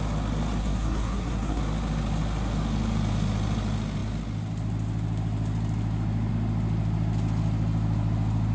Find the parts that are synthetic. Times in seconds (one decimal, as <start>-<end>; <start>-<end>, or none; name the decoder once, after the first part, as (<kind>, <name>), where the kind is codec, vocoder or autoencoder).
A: 0.6-1.6 (codec, SNAC)